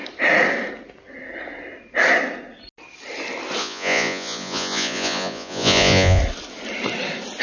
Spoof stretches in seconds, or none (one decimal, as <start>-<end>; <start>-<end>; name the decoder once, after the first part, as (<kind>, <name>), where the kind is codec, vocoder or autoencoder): 3.6-6.2 (vocoder, Vocos)